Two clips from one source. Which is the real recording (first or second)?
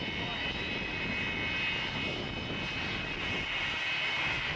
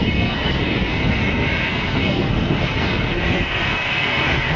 first